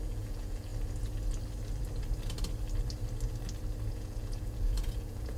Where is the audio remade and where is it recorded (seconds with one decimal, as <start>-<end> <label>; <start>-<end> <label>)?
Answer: 0.0-0.7 remade; 0.7-3.9 recorded; 3.9-5.4 remade